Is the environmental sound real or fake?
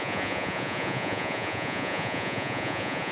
fake